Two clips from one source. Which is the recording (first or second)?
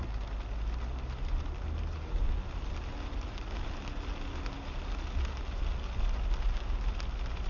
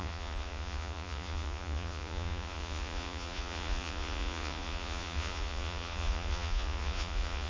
first